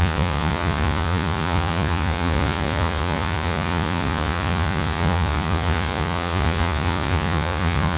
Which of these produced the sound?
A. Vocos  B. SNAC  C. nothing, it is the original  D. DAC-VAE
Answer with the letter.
A